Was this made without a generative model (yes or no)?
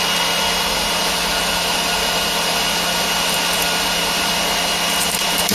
yes